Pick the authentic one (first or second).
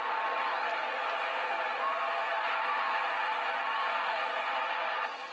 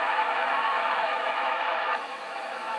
first